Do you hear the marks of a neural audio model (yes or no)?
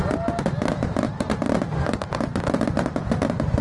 no